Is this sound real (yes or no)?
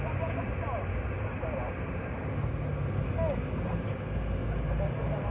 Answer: yes